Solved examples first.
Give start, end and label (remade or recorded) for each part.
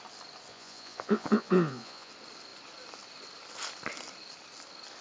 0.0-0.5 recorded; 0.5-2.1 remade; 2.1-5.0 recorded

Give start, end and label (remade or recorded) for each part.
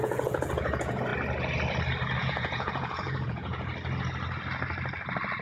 0.0-1.1 remade; 1.1-2.2 recorded; 2.2-3.7 remade; 3.7-5.4 recorded